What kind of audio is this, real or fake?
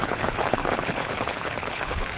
fake